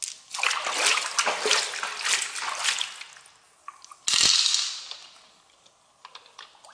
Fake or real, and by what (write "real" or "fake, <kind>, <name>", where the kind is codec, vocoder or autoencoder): real